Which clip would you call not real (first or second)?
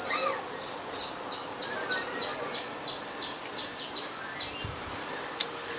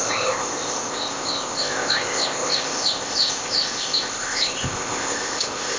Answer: second